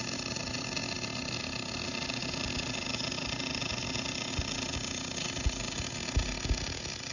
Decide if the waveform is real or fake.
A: real